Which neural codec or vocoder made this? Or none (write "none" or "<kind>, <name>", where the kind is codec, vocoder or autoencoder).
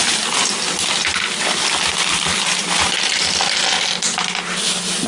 none